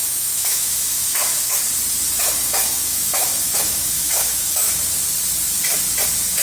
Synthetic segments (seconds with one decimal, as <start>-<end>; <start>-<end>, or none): 0.0-1.6; 2.2-4.7